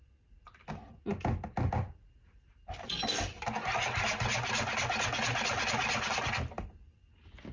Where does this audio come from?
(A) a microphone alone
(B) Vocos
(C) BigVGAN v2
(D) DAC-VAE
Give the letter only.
A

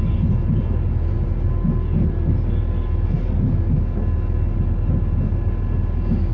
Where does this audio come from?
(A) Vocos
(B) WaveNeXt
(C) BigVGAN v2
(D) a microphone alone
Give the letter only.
D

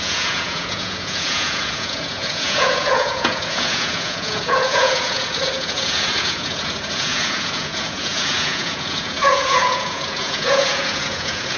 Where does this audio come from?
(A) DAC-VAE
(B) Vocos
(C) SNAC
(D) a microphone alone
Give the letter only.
B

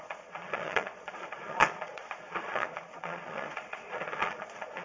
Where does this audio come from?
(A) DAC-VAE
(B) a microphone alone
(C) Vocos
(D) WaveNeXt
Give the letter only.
C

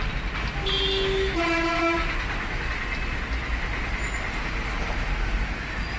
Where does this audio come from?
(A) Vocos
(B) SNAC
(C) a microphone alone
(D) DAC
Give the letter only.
C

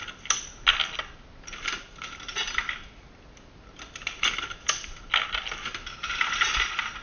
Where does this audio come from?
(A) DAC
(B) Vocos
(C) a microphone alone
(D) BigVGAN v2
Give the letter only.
C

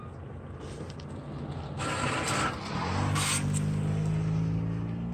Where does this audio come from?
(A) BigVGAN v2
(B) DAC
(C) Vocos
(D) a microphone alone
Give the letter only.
D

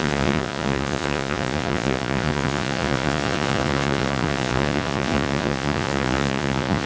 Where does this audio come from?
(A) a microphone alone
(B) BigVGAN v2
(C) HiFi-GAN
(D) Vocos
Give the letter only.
D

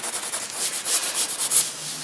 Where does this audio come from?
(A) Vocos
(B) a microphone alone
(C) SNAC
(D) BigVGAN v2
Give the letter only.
B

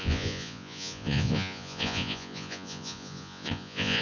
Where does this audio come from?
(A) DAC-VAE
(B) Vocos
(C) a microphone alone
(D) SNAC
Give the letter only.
B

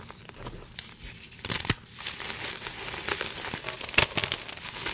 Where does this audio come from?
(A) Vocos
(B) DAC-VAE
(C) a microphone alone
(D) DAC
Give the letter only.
C